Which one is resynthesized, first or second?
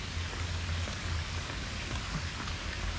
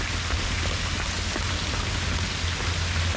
first